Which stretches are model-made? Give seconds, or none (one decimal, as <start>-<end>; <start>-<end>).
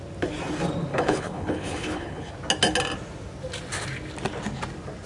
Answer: 0.9-2.3